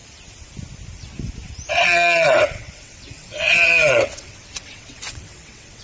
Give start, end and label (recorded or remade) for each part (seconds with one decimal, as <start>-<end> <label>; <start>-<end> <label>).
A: 0.0-1.7 recorded; 1.7-5.8 remade